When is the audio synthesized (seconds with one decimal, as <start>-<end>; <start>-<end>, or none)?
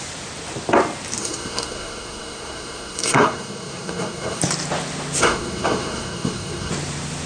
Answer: 1.2-4.4; 5.2-6.7